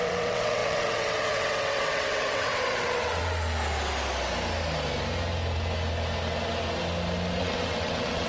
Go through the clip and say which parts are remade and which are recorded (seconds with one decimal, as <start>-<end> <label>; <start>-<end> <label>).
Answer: 0.0-3.2 remade; 3.2-7.4 recorded; 7.4-8.3 remade